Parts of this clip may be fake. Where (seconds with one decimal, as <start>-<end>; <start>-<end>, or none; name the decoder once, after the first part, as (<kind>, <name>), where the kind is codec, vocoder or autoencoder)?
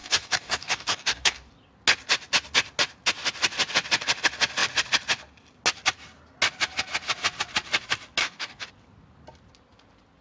0.0-1.5 (codec, DAC); 8.2-8.7